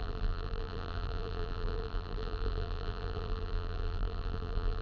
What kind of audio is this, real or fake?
fake